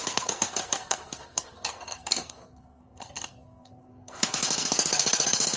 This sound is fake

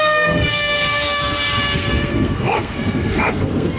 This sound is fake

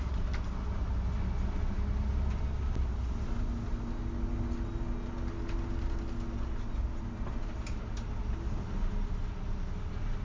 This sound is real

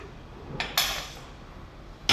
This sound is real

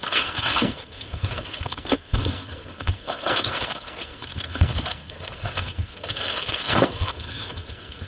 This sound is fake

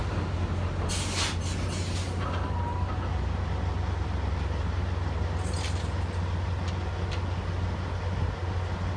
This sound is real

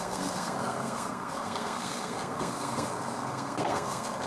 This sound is fake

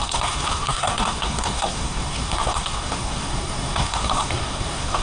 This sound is fake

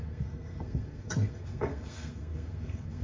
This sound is fake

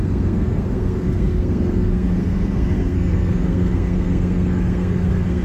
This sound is fake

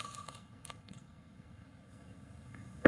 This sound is fake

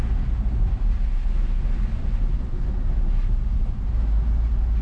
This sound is real